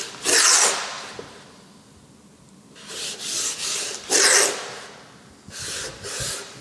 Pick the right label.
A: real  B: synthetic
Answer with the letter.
A